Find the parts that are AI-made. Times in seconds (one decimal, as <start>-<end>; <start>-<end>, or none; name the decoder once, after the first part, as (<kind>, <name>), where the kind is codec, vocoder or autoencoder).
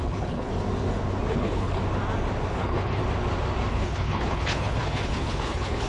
0.0-0.5 (codec, HILCodec); 1.3-1.8; 2.5-3.0; 3.7-5.9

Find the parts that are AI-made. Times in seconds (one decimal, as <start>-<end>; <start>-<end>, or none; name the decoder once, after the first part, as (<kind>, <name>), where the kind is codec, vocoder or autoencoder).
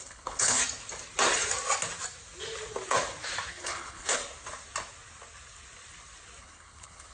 0.0-0.6 (codec, HILCodec); 3.5-4.2; 6.4-7.1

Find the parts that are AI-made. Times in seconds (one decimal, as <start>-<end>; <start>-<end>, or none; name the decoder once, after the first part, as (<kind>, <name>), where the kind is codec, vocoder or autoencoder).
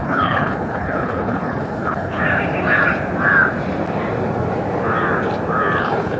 0.0-2.2 (codec, HILCodec); 5.8-6.2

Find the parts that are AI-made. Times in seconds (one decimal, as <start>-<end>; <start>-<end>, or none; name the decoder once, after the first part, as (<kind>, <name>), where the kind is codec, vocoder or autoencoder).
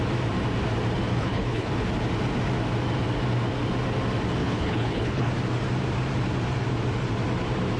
1.1-1.7 (codec, HILCodec); 4.4-5.3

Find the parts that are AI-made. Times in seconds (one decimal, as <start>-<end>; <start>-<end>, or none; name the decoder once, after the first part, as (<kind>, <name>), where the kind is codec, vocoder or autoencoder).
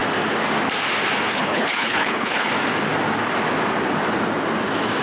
1.3-2.5 (codec, HILCodec)